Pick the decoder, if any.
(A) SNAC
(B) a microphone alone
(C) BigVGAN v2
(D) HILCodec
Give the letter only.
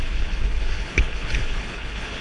D